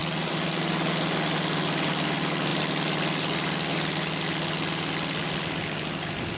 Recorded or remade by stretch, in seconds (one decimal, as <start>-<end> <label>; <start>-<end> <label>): 0.0-6.4 recorded